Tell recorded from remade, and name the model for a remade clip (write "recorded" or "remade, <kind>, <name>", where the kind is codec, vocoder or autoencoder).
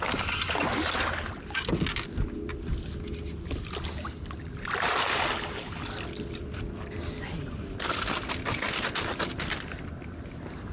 recorded